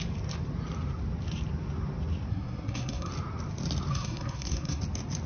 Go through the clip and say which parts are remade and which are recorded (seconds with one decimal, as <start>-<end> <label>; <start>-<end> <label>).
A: 0.0-2.3 recorded; 2.3-3.1 remade; 3.1-3.9 recorded; 3.9-4.8 remade; 4.8-5.3 recorded

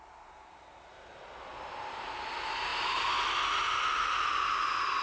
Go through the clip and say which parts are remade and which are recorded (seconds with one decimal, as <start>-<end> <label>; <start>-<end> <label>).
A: 0.0-5.0 recorded

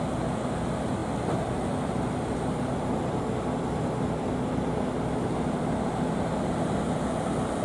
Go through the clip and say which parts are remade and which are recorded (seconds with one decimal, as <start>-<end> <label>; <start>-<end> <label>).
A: 0.0-7.6 recorded

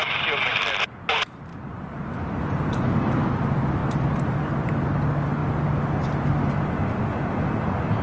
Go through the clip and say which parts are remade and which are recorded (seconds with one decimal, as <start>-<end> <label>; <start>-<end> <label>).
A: 0.0-1.5 recorded; 1.5-3.3 remade; 3.3-3.8 recorded; 3.8-4.5 remade; 4.5-8.0 recorded

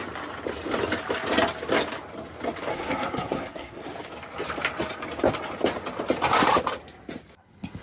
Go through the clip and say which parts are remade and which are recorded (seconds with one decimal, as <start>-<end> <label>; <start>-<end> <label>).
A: 0.0-2.7 recorded; 2.7-3.8 remade; 3.8-7.8 recorded

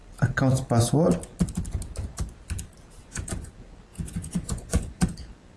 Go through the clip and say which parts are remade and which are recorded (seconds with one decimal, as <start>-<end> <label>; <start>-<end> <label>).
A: 0.0-3.0 recorded; 3.0-3.5 remade; 3.5-3.9 recorded; 3.9-5.1 remade; 5.1-5.6 recorded

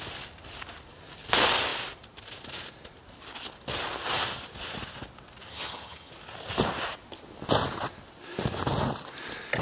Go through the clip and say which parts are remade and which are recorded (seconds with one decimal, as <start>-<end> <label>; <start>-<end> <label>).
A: 0.0-5.5 recorded; 5.5-6.1 remade; 6.1-9.6 recorded